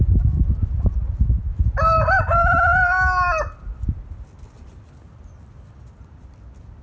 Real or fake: real